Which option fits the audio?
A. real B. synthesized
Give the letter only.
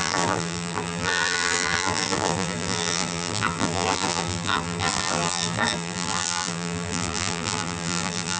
B